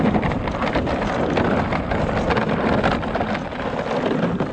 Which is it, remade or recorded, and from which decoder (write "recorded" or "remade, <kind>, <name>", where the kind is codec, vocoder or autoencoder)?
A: recorded